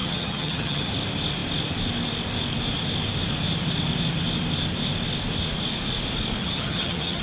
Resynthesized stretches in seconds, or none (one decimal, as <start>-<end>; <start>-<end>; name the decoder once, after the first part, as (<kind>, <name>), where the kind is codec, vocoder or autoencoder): 0.0-0.9 (vocoder, HiFi-GAN); 6.4-7.2